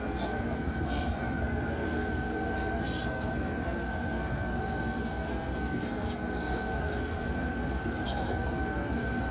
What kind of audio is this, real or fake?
fake